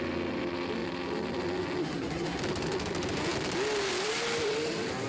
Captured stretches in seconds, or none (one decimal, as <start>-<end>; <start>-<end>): 0.0-1.8; 2.4-5.1